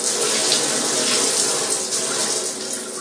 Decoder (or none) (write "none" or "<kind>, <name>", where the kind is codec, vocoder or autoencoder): none